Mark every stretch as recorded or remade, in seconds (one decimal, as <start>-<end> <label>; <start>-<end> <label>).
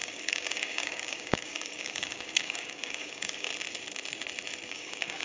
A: 0.0-3.5 remade; 3.5-4.7 recorded; 4.7-5.2 remade